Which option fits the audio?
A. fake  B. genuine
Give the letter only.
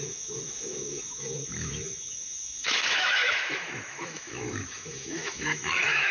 A